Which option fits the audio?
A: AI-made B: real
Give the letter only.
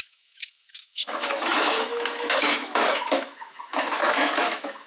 A